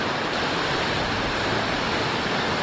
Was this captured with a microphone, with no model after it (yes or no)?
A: yes